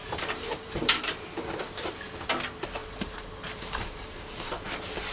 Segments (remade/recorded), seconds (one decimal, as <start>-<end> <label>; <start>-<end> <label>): 0.0-1.3 remade; 1.3-2.8 recorded; 2.8-4.5 remade; 4.5-5.1 recorded